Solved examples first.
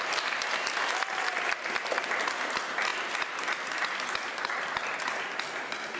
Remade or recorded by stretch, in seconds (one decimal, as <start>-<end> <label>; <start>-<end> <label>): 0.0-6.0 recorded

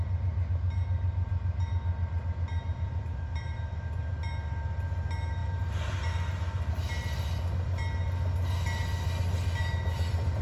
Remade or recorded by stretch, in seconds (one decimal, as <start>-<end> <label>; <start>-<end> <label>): 0.0-5.4 recorded; 5.4-6.7 remade; 6.7-10.4 recorded

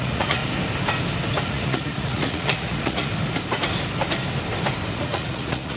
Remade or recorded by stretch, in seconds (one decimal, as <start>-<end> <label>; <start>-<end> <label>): 0.0-0.4 remade; 0.4-1.5 recorded; 1.5-3.1 remade; 3.1-4.9 recorded; 4.9-5.8 remade

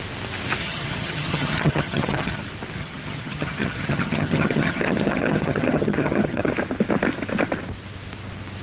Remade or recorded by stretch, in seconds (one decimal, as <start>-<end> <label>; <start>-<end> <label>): 0.0-0.6 recorded; 0.6-2.4 remade; 2.4-2.8 recorded; 2.8-6.5 remade; 6.5-8.6 recorded

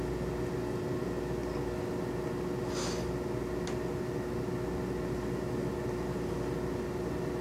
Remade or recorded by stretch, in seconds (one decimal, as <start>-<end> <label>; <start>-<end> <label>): 0.0-7.4 recorded

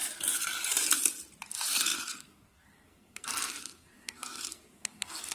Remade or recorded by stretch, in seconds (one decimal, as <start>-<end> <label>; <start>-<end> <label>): 0.0-1.5 recorded; 1.5-5.3 remade

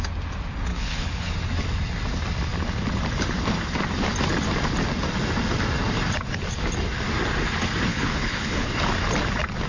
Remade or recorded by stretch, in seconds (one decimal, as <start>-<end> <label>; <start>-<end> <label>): 0.0-0.7 recorded; 0.7-1.3 remade; 1.3-7.9 recorded; 7.9-8.7 remade; 8.7-9.7 recorded